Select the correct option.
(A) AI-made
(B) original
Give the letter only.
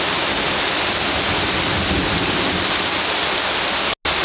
B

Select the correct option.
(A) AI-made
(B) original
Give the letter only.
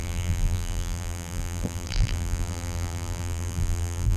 A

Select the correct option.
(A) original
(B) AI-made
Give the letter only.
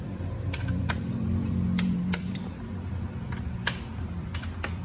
B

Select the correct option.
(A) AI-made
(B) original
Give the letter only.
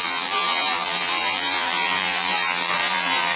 A